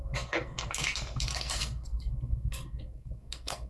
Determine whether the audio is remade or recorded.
remade